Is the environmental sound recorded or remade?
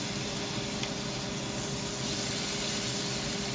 recorded